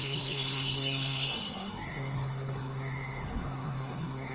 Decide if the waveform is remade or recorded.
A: remade